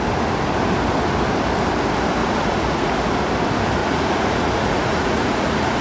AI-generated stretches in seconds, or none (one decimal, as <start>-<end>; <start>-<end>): 2.2-2.9; 3.8-5.8